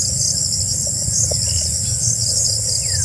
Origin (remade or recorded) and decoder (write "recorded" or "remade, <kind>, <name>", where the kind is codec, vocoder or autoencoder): recorded